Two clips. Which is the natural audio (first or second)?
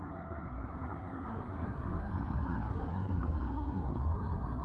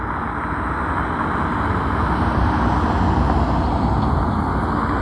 second